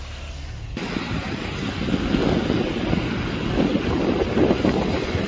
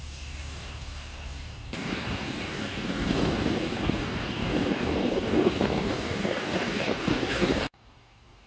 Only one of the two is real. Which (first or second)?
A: first